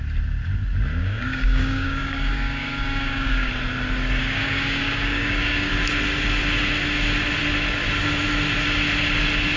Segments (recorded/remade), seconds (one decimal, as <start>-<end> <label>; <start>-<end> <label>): 0.0-1.0 recorded; 1.0-3.5 remade; 3.5-4.2 recorded; 4.2-5.7 remade; 5.7-9.6 recorded